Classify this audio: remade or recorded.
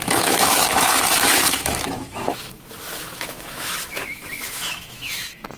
remade